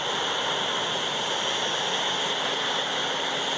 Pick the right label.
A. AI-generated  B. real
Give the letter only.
B